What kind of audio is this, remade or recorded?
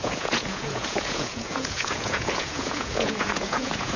remade